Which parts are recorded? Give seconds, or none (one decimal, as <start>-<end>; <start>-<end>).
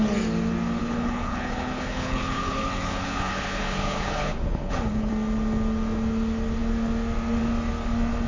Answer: 0.0-0.8; 5.1-8.3